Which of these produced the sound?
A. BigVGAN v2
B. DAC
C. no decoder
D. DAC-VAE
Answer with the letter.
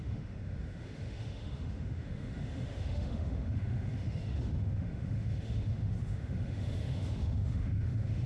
D